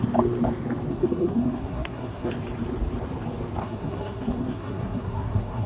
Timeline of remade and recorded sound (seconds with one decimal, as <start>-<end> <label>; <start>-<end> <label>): 0.0-0.9 recorded; 0.9-2.3 remade; 2.3-3.6 recorded; 3.6-5.7 remade